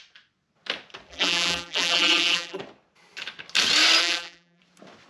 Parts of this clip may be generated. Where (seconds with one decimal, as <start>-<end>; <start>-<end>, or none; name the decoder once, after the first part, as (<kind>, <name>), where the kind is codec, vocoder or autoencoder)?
1.1-2.6 (vocoder, BigVGAN v2); 4.0-4.6